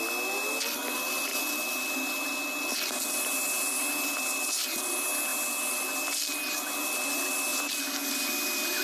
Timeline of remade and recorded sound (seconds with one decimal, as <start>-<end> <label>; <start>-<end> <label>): 0.0-8.8 recorded